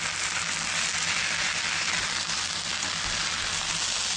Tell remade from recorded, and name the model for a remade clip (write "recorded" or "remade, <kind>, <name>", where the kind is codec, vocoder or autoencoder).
recorded